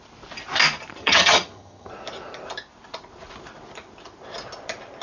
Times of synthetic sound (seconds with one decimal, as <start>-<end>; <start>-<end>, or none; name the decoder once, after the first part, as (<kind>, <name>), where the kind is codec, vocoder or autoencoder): 1.0-1.9 (vocoder, HiFi-GAN)